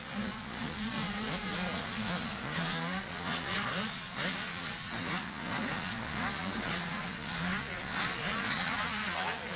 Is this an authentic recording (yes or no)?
no